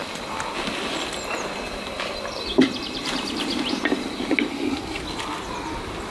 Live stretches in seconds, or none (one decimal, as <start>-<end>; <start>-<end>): 0.0-4.5; 5.0-6.1